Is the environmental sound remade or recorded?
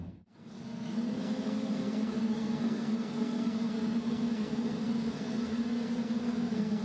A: remade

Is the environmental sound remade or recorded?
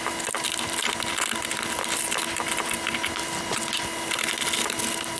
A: recorded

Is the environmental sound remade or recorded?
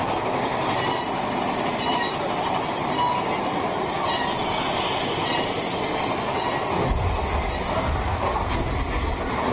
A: recorded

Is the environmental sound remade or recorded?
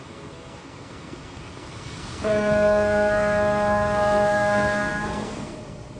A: remade